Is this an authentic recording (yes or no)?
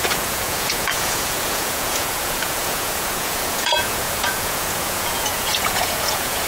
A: no